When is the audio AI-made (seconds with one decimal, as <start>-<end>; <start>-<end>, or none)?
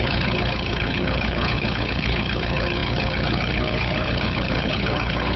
0.0-5.4